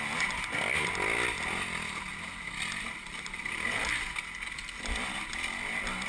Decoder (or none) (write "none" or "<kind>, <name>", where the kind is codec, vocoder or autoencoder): none